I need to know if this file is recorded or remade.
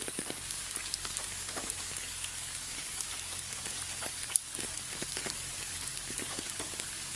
remade